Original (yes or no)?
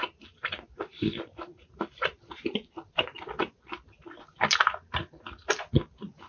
yes